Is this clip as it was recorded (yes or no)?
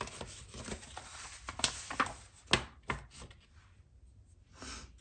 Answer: yes